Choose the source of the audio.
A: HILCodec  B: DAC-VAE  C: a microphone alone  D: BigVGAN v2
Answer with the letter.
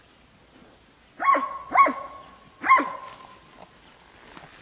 C